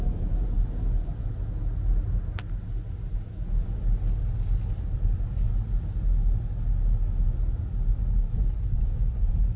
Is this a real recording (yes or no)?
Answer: yes